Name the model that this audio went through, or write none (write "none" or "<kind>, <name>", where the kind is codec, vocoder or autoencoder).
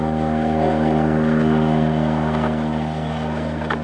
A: codec, SNAC